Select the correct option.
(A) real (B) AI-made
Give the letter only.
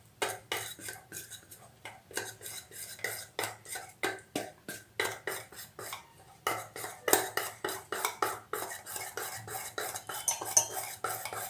A